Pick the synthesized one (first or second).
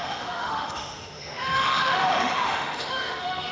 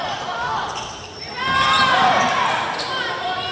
first